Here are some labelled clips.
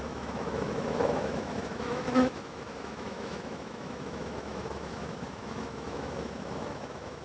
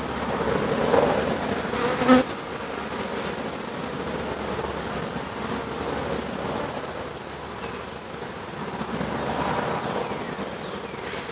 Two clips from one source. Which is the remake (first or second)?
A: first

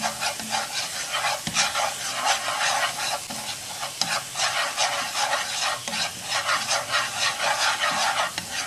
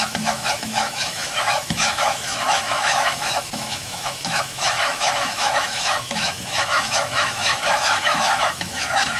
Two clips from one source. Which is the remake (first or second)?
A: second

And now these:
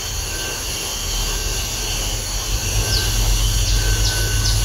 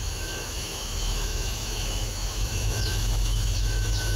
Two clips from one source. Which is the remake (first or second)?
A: second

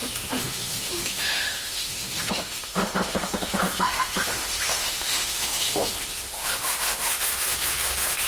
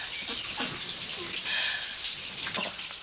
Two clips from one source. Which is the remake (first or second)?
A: first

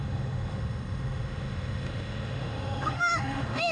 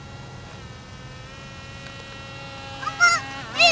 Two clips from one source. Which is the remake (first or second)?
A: first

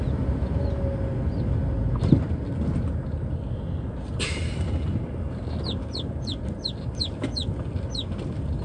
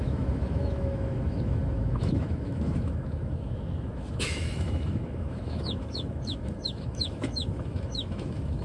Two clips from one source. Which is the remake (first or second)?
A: second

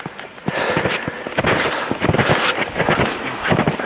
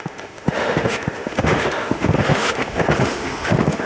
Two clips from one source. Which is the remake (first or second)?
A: second